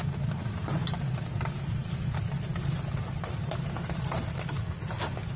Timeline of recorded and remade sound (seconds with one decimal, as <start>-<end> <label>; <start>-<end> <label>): 0.0-5.4 recorded